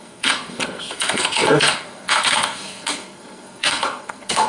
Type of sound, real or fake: fake